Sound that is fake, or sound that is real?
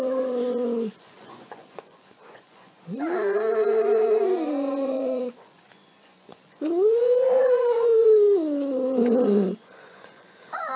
fake